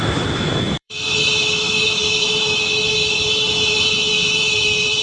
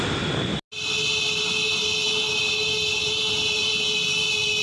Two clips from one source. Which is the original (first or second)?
second